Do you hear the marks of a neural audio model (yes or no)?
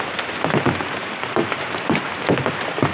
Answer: no